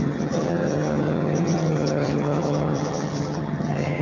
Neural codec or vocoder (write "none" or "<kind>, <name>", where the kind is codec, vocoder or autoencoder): vocoder, HiFi-GAN